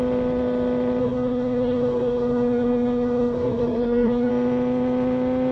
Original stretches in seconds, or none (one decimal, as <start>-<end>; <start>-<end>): 0.0-1.0; 4.3-5.5